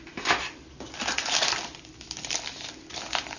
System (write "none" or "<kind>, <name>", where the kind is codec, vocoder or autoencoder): vocoder, BigVGAN v2